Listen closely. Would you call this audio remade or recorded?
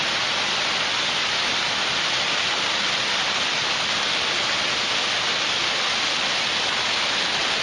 recorded